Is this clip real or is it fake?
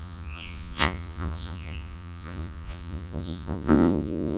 fake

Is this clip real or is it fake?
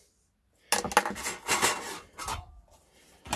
real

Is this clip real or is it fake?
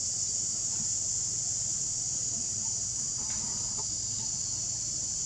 real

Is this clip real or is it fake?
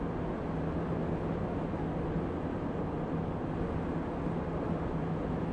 real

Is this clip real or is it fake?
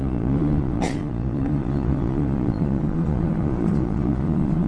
fake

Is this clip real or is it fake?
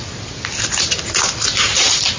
real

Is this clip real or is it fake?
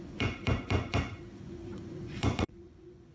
fake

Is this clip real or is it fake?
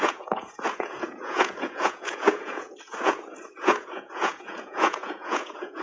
fake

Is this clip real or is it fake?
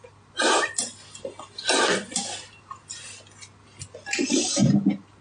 real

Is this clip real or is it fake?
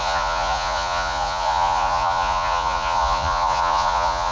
fake